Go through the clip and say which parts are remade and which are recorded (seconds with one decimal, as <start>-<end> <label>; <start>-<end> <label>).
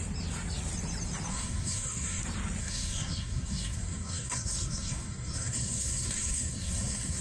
0.0-1.3 recorded; 1.3-2.2 remade; 2.2-2.6 recorded; 2.6-7.2 remade